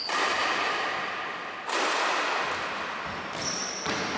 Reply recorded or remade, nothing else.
recorded